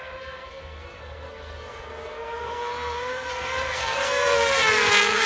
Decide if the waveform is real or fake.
fake